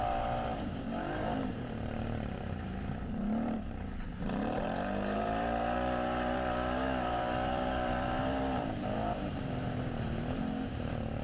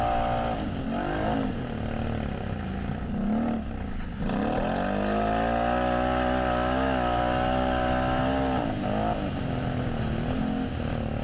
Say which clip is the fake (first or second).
first